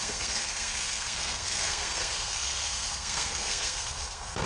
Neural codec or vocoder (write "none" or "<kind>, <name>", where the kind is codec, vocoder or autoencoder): codec, SNAC